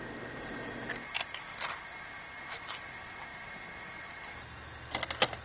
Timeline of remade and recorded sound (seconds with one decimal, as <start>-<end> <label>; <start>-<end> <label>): 0.0-5.4 recorded